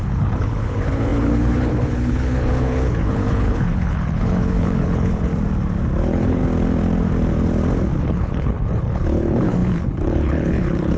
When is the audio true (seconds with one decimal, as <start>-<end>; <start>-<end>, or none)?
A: 5.3-6.0; 6.4-8.0